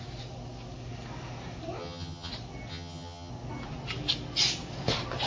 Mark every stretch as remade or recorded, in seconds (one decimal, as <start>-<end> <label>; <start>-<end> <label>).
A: 0.0-1.8 recorded; 1.8-2.3 remade; 2.3-2.7 recorded; 2.7-3.3 remade; 3.3-5.3 recorded